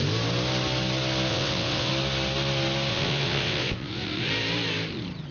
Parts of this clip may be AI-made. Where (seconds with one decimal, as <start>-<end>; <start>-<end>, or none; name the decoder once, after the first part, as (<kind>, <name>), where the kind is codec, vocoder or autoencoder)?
1.3-1.9 (vocoder, WaveNeXt); 2.9-4.3